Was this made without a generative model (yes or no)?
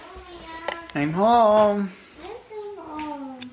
yes